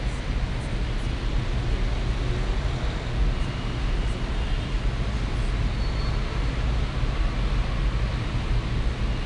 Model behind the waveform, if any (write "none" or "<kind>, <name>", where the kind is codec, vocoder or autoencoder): none